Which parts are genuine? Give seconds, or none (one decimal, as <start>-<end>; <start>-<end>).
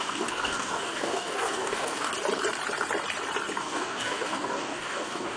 2.1-3.6